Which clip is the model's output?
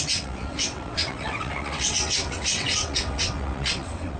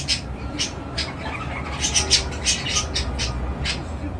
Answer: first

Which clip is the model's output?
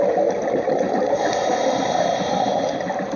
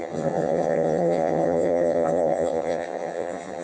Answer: second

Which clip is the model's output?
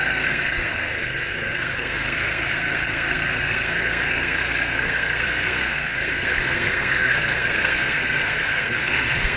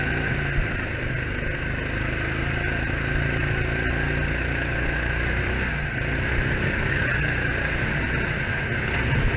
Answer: first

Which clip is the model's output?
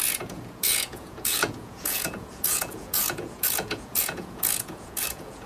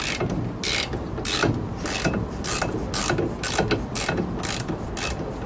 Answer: first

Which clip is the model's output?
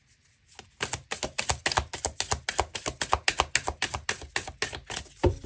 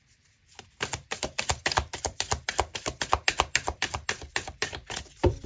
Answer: second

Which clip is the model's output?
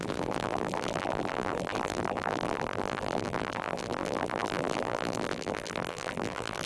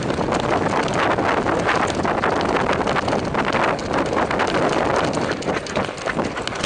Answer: first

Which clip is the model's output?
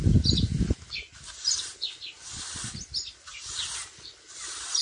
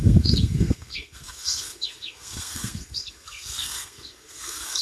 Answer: second